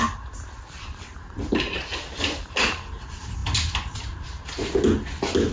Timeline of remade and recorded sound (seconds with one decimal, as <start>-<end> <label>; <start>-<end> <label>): 0.0-5.5 recorded